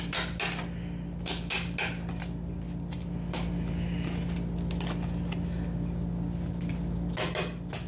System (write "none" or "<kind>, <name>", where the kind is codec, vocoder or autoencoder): none